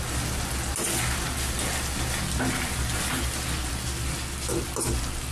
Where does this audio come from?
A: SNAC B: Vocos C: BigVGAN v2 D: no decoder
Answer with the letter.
D